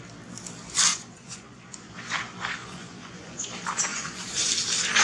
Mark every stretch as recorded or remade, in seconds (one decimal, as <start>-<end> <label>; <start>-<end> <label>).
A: 0.0-0.9 recorded; 0.9-1.9 remade; 1.9-2.6 recorded; 2.6-3.5 remade; 3.5-3.9 recorded; 3.9-4.5 remade; 4.5-5.0 recorded